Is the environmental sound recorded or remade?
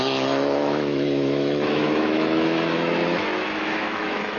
remade